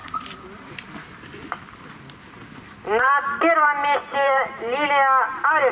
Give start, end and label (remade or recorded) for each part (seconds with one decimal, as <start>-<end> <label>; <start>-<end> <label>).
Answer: 0.0-3.4 remade; 3.4-4.2 recorded; 4.2-4.9 remade; 4.9-5.7 recorded